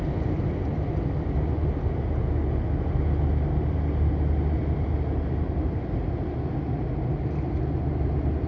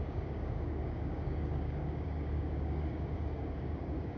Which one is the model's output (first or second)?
second